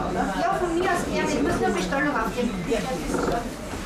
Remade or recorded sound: remade